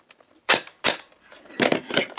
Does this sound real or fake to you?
fake